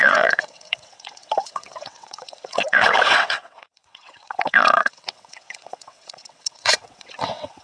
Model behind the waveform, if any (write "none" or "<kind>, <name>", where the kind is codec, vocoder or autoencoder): vocoder, WaveNeXt